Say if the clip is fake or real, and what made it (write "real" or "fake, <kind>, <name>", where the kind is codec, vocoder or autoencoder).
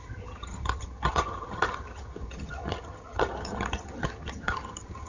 fake, vocoder, HiFi-GAN